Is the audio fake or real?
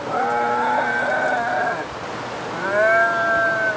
real